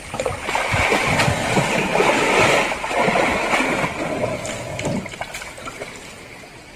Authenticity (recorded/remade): recorded